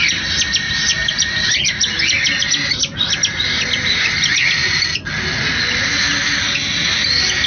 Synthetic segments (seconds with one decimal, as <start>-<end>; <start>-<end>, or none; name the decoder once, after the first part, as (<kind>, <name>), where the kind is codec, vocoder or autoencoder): none